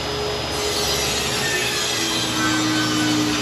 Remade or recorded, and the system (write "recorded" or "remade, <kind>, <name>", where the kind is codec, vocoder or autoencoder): recorded